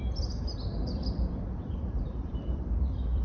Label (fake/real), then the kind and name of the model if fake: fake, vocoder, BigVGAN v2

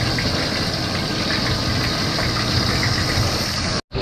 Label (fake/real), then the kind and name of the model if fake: real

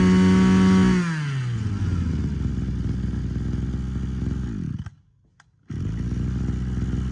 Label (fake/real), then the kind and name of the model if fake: real